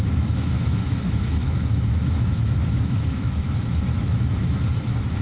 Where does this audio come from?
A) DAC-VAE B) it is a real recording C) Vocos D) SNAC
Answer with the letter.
A